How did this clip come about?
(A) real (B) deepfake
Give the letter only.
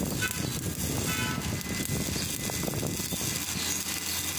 A